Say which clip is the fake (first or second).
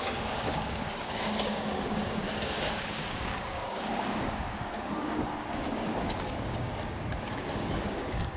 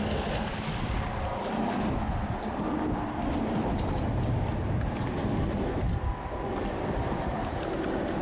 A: first